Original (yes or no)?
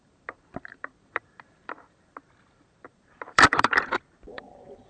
no